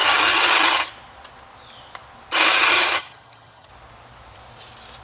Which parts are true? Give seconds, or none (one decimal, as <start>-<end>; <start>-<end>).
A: 0.9-2.5; 3.7-5.0